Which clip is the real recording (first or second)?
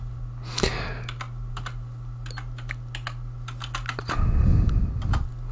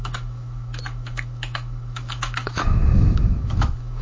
first